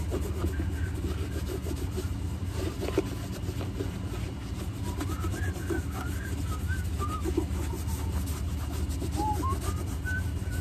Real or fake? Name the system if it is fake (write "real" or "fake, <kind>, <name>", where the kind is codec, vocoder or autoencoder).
real